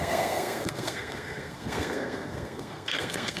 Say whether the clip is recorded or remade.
remade